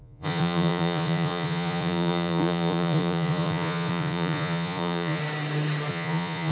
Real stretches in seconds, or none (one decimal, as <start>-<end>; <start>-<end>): 5.2-5.9